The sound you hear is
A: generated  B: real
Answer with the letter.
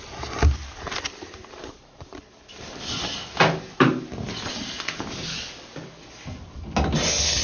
B